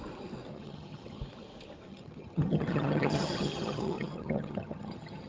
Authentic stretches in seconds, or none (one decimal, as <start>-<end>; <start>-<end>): 0.0-0.5; 1.2-1.9